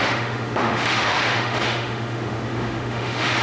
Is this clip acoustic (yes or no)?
no